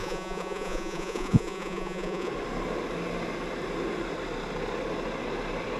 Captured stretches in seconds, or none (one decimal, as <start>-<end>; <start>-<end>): 2.3-5.8